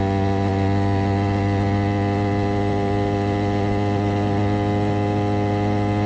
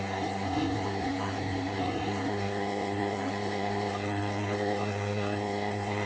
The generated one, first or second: second